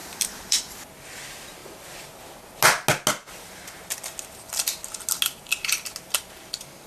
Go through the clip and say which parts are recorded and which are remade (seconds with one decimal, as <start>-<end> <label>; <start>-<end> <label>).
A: 0.0-0.6 remade; 0.6-6.9 recorded